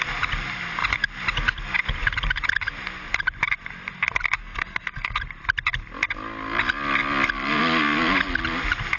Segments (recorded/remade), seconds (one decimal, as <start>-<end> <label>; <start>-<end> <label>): 0.0-4.4 recorded; 4.4-5.2 remade; 5.2-9.0 recorded